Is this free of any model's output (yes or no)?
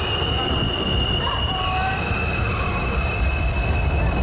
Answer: yes